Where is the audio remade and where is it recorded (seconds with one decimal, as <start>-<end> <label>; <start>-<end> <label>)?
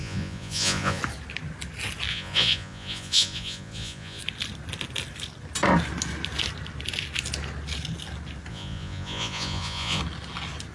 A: 0.0-1.0 remade; 1.0-2.1 recorded; 2.1-4.2 remade; 4.2-8.5 recorded; 8.5-10.0 remade; 10.0-10.7 recorded